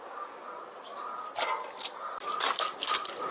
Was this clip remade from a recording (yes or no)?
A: no